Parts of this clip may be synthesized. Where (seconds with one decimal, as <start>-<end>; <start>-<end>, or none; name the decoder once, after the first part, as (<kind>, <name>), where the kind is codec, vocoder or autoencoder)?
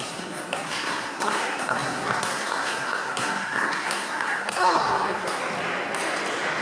0.0-5.4 (codec, SNAC)